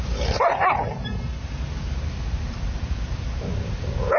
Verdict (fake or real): fake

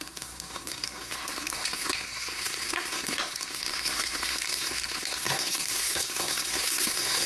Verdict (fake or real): fake